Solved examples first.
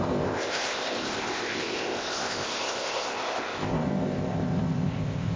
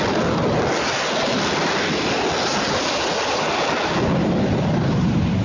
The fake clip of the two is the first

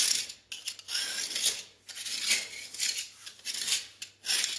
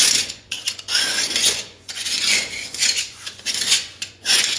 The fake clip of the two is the second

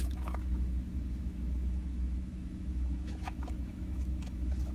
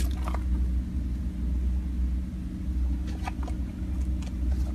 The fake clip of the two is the first